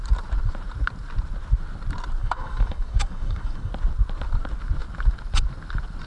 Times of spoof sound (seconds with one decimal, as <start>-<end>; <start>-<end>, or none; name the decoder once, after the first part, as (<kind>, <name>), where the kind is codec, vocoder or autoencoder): 2.2-3.7 (codec, DAC)